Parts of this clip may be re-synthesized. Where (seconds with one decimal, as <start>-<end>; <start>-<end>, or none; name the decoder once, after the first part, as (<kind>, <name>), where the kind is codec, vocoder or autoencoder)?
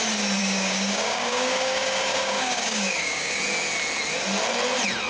0.4-3.4 (codec, DAC)